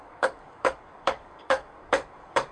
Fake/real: fake